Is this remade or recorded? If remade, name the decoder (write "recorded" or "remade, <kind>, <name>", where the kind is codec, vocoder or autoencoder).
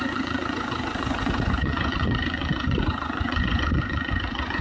remade, vocoder, Vocos